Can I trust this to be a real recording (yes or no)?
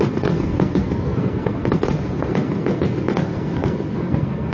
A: no